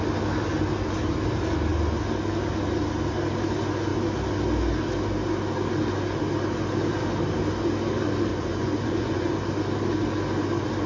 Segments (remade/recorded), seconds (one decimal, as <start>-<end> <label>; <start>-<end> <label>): 0.0-8.3 recorded; 8.3-9.3 remade; 9.3-10.9 recorded